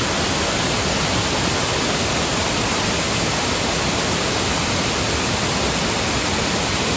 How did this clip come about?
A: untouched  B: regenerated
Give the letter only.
A